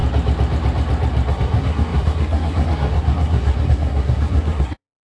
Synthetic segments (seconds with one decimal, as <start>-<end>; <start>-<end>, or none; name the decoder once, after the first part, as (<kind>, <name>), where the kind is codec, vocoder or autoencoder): 1.3-5.2 (codec, SNAC)